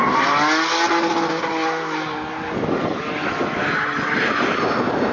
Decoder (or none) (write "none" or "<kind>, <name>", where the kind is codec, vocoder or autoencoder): none